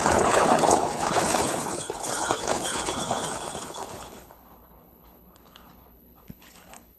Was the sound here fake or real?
fake